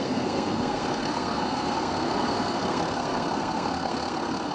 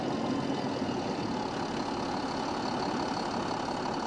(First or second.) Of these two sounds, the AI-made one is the first